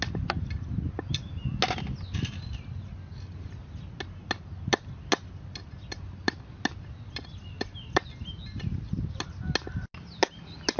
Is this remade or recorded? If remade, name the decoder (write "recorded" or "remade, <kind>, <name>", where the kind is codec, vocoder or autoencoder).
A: recorded